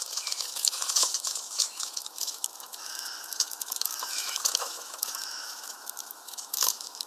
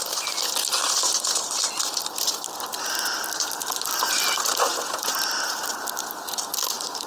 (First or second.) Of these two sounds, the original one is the second